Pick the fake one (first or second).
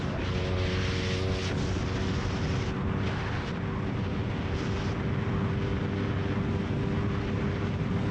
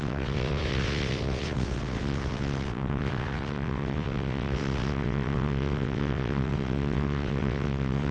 second